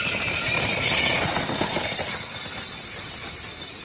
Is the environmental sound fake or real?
real